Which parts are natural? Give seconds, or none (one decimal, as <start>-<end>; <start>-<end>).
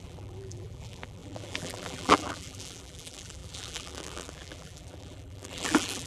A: none